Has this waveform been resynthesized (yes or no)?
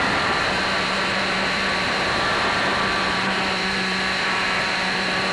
yes